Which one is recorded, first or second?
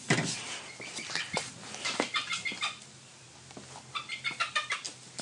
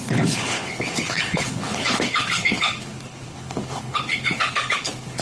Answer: first